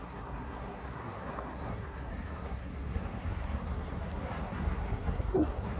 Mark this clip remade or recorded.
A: remade